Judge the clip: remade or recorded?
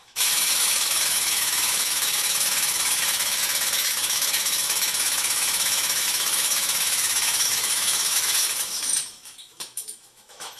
remade